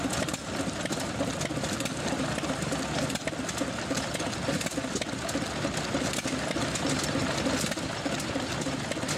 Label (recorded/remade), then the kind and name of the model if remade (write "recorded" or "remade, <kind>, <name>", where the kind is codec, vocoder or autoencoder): recorded